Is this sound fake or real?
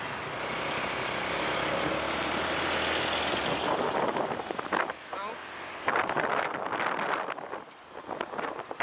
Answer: real